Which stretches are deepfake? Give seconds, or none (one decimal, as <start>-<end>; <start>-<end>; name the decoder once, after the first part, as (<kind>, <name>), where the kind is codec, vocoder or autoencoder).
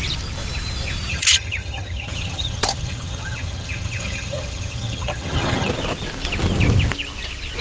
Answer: 1.1-5.7 (vocoder, HiFi-GAN)